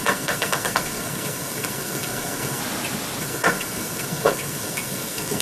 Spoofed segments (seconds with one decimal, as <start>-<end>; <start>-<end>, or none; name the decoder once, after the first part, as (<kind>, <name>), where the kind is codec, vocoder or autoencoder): 0.0-2.6 (codec, SNAC); 3.2-5.4